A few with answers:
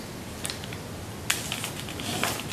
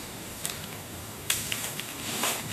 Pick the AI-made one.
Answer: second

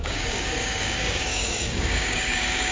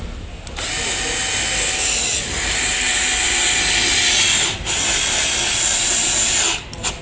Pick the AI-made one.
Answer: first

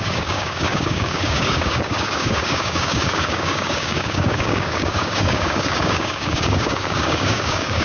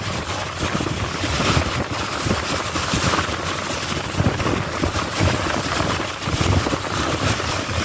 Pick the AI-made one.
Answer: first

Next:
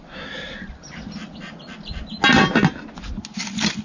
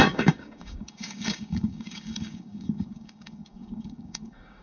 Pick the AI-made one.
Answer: second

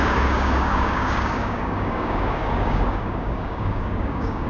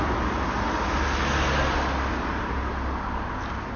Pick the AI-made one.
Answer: first